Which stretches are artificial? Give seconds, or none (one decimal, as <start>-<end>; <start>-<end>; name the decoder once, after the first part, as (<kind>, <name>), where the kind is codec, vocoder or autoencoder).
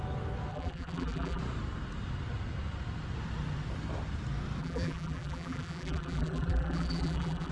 0.5-1.4 (vocoder, BigVGAN v2); 4.6-7.5